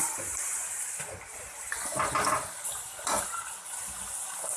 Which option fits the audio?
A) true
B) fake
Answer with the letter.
B